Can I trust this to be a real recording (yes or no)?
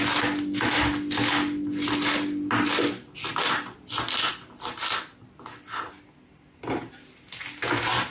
yes